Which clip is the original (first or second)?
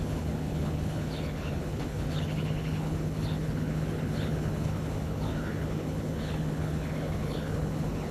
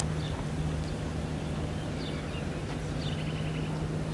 second